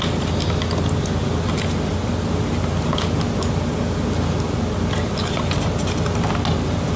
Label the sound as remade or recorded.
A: recorded